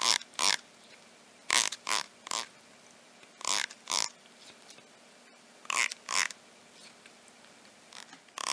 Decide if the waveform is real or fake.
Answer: real